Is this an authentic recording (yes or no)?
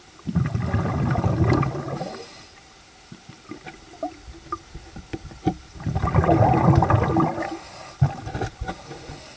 yes